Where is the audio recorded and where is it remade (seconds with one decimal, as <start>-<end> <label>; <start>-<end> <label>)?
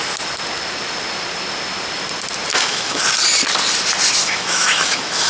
0.0-2.5 recorded; 2.5-3.0 remade; 3.0-4.2 recorded; 4.2-5.3 remade